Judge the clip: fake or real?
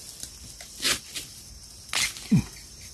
real